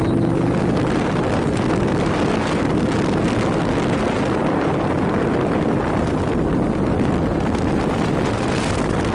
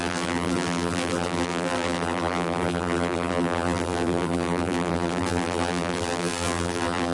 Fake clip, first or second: second